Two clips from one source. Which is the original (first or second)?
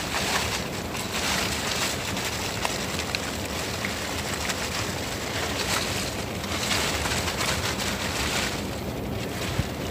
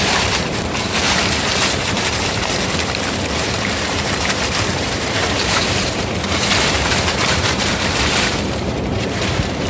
first